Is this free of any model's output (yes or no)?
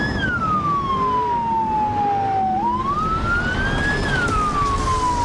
yes